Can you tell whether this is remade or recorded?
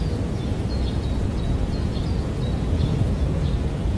remade